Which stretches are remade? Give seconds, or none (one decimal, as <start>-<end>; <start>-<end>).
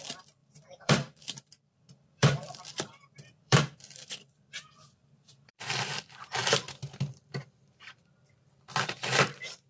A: 0.0-6.4; 7.1-9.7